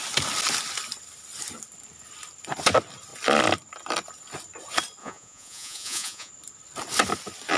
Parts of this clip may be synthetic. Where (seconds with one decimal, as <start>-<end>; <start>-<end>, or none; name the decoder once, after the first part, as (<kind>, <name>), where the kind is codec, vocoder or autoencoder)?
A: 5.0-6.3 (vocoder, Vocos)

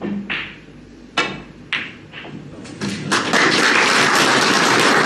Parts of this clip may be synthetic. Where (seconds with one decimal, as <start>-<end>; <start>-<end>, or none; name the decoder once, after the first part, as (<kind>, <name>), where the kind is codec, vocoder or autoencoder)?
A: none